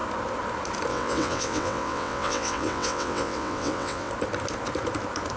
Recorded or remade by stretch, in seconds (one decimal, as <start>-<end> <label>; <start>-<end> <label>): 0.0-0.9 recorded; 0.9-4.1 remade; 4.1-5.4 recorded